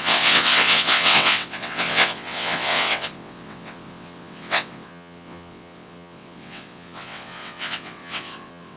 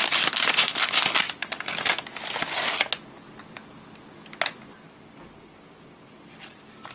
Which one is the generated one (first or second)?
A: first